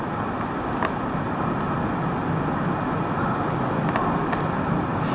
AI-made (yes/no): no